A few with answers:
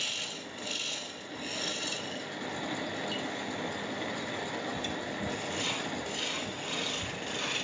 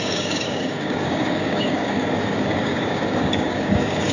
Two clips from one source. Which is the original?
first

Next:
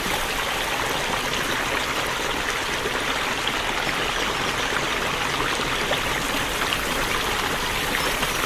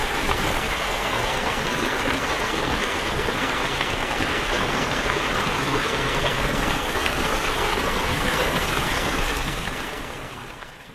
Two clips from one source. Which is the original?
first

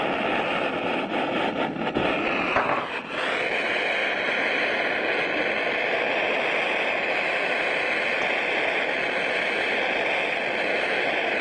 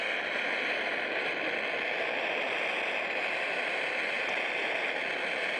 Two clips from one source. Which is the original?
first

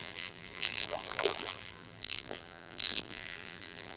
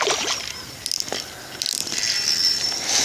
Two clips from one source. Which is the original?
second